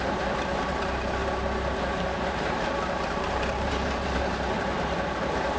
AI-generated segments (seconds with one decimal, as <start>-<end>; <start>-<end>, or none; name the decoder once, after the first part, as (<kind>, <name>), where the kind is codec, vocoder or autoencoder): 0.0-5.6 (vocoder, BigVGAN v2)